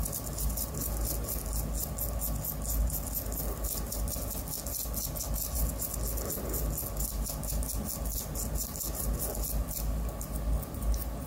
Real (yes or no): yes